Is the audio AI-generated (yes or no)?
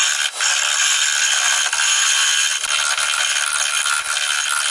no